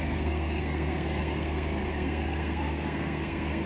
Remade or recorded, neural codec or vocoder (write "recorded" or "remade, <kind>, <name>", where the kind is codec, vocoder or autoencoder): remade, codec, SNAC